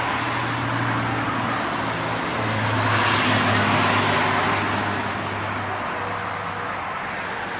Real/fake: real